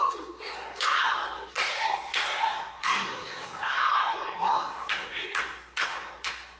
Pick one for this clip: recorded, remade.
remade